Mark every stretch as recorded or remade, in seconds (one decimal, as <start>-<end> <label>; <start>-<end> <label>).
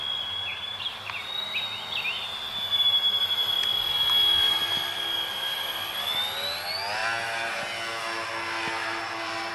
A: 0.0-0.5 recorded; 0.5-1.3 remade; 1.3-8.8 recorded; 8.8-9.5 remade